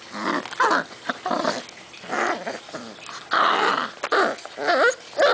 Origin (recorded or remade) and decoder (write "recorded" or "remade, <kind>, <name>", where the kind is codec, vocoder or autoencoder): recorded